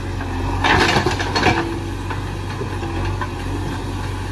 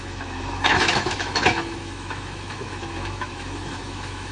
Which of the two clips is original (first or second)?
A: first